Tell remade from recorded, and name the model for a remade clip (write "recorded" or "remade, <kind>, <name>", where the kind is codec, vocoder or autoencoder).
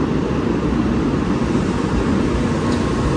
recorded